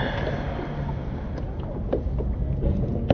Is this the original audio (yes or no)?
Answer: yes